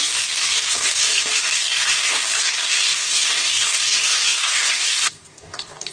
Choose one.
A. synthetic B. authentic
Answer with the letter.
A